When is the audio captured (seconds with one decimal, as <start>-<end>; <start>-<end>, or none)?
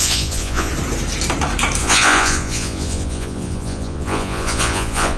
0.7-1.8